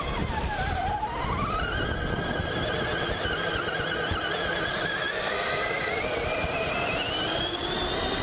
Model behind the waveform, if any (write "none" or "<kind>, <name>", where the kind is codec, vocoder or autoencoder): none